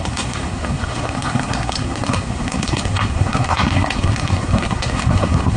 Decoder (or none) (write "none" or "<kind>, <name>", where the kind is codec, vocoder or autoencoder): codec, SNAC